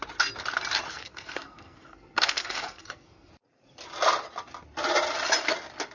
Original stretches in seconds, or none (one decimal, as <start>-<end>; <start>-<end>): 0.0-0.9; 3.3-5.9